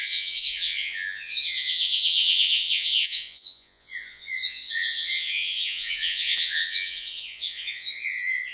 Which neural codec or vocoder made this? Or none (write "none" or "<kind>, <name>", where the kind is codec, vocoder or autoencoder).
vocoder, Vocos